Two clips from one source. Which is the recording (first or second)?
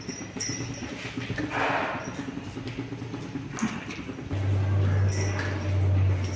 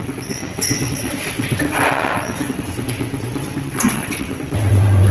first